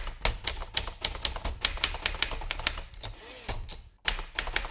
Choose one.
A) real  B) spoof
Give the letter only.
A